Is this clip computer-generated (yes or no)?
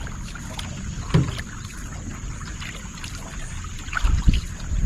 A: no